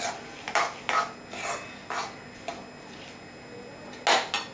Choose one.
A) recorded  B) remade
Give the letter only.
A